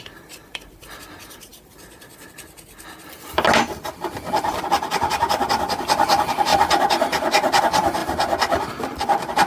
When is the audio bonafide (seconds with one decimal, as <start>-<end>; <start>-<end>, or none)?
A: 1.5-4.6; 6.5-7.6; 8.0-8.7